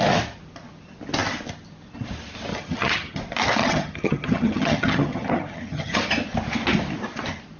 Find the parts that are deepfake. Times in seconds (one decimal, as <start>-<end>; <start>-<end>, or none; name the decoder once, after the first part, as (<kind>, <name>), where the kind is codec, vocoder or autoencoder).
2.5-3.2 (vocoder, HiFi-GAN); 3.6-6.1